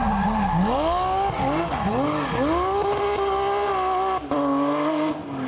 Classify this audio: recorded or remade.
recorded